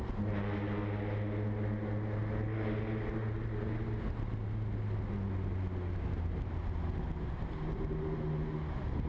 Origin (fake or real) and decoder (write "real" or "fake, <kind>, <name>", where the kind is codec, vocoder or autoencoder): real